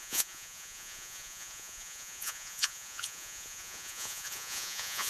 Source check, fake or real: fake